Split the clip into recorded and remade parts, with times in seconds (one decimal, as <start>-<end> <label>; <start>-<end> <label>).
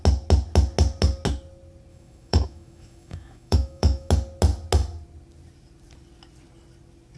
0.0-1.9 recorded; 1.9-4.1 remade; 4.1-7.2 recorded